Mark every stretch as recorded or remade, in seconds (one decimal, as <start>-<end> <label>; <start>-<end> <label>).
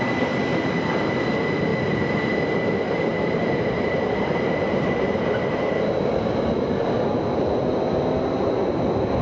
0.0-1.7 recorded; 1.7-6.7 remade; 6.7-9.2 recorded